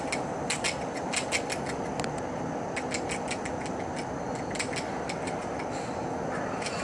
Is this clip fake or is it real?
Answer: real